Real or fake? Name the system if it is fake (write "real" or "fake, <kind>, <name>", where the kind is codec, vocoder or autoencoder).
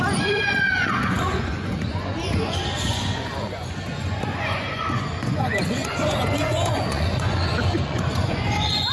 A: fake, vocoder, Vocos